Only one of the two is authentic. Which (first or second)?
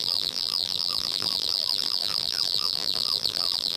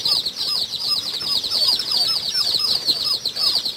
second